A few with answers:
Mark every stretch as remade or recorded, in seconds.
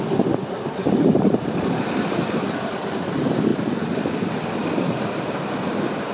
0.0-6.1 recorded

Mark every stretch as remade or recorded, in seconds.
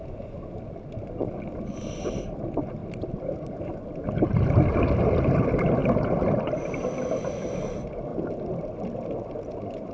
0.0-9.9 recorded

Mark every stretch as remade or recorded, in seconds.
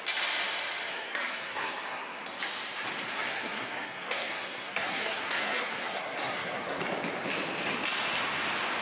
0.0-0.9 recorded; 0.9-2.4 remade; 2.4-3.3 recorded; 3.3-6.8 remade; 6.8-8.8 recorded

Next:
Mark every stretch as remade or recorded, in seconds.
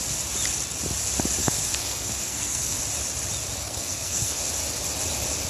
0.0-1.4 recorded; 1.4-2.8 remade; 2.8-3.6 recorded; 3.6-4.4 remade; 4.4-5.5 recorded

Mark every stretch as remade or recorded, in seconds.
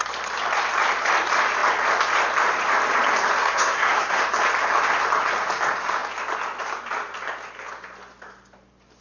0.0-3.4 recorded; 3.4-4.2 remade; 4.2-9.0 recorded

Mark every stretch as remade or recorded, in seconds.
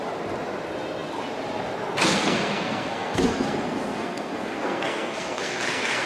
0.0-2.0 recorded; 2.0-6.1 remade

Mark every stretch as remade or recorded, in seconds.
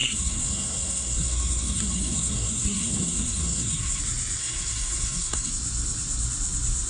0.0-4.0 remade; 4.0-4.4 recorded; 4.4-5.5 remade; 5.5-6.9 recorded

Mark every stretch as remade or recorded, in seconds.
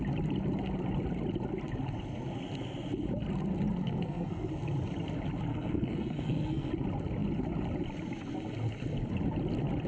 0.0-3.8 recorded; 3.8-4.5 remade; 4.5-5.5 recorded; 5.5-6.7 remade; 6.7-9.9 recorded